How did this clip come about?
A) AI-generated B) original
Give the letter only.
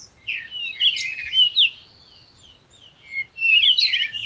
B